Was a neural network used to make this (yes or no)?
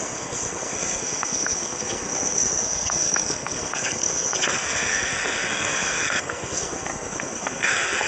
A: yes